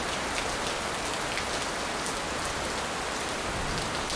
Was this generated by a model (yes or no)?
no